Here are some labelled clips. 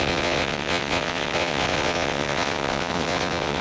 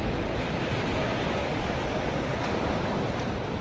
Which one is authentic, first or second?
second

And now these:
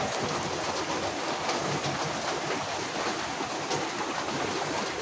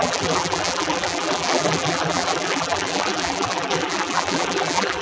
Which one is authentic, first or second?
first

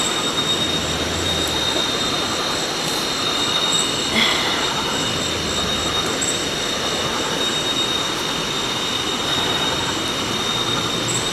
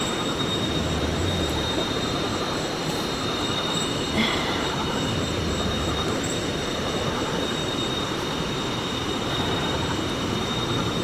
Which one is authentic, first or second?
first